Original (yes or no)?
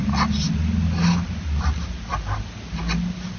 yes